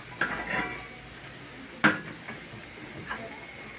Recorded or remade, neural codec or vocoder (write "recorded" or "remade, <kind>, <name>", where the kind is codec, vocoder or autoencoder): recorded